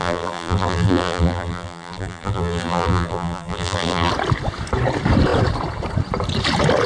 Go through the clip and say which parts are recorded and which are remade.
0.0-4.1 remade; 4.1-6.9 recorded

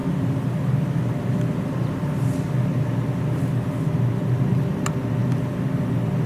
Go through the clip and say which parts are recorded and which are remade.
0.0-6.3 recorded

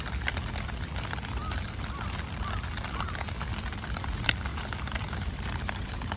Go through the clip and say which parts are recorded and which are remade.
0.0-4.5 recorded; 4.5-6.2 remade

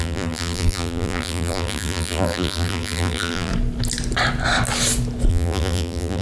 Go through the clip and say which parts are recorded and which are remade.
0.0-3.5 remade; 3.5-5.3 recorded; 5.3-6.2 remade

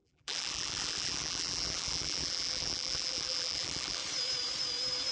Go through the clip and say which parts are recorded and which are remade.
0.0-4.0 remade; 4.0-5.1 recorded

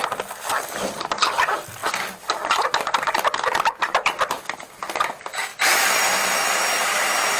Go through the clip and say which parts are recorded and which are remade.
0.0-1.8 recorded; 1.8-4.4 remade; 4.4-5.5 recorded; 5.5-6.5 remade; 6.5-7.4 recorded

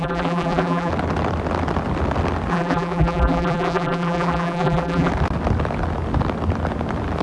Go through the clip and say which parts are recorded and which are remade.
0.0-0.9 remade; 0.9-2.5 recorded; 2.5-5.1 remade; 5.1-7.2 recorded

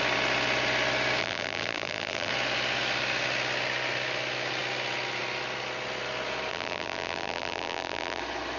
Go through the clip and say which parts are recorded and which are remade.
0.0-1.2 recorded; 1.2-2.3 remade; 2.3-6.5 recorded; 6.5-8.2 remade; 8.2-8.6 recorded